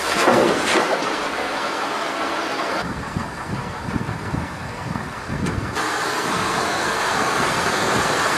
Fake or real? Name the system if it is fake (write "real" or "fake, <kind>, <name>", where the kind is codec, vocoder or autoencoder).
fake, codec, SNAC